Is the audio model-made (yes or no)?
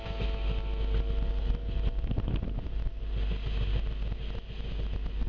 no